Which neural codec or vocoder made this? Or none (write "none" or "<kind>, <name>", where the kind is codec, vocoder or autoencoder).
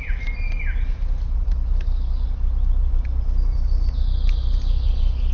none